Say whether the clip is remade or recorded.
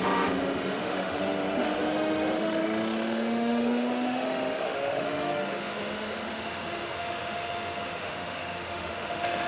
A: remade